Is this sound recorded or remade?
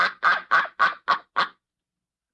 recorded